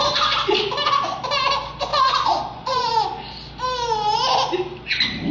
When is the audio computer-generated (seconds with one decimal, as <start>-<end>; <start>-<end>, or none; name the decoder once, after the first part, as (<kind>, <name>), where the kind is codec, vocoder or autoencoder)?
1.9-2.8 (vocoder, Vocos)